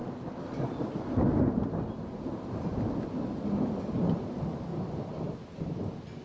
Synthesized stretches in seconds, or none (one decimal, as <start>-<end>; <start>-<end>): none